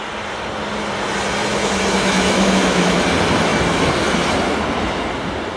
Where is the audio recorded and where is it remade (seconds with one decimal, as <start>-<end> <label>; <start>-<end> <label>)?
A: 0.0-1.5 recorded; 1.5-3.0 remade; 3.0-5.6 recorded